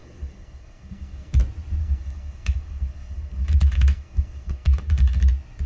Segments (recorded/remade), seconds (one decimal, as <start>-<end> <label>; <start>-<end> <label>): 0.0-1.4 remade; 1.4-1.8 recorded; 1.8-5.2 remade; 5.2-5.7 recorded